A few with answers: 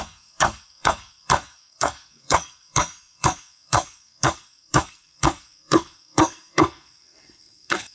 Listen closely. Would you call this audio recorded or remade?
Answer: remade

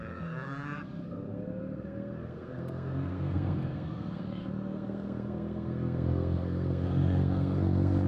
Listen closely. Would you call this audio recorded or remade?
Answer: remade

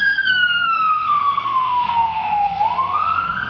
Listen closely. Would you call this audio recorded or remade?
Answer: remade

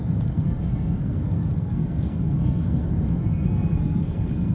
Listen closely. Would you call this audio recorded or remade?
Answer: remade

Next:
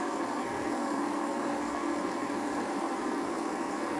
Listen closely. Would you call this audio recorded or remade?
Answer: remade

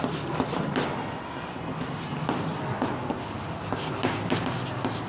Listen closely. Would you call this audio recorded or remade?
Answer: recorded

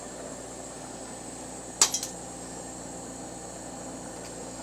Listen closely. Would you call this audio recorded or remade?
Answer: recorded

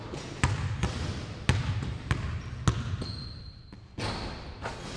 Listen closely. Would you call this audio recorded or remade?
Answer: recorded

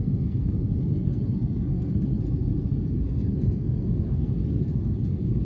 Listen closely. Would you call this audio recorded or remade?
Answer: remade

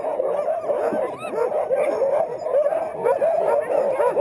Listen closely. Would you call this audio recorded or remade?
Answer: recorded